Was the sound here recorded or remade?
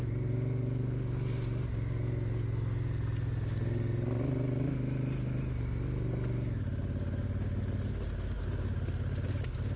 recorded